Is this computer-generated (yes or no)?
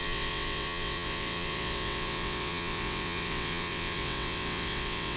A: yes